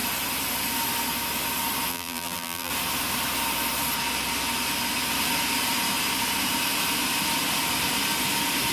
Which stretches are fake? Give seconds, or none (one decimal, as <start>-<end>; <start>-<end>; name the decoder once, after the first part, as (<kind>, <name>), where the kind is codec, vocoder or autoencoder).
1.9-2.7 (vocoder, BigVGAN v2)